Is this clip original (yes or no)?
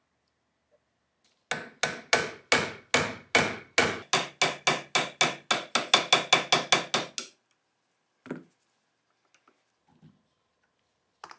yes